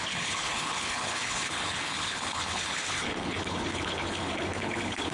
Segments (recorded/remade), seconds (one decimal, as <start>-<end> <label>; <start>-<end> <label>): 0.0-5.1 remade